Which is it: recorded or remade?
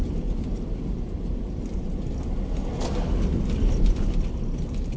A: recorded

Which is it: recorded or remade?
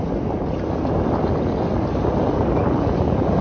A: recorded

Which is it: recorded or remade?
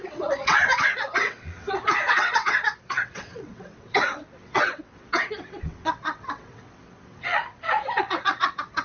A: remade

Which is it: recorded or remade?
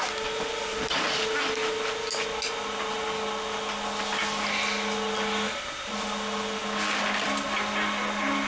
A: recorded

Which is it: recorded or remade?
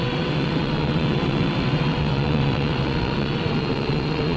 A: remade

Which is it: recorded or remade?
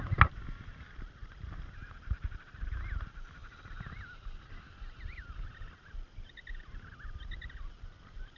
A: recorded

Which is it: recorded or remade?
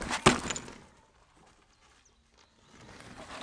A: recorded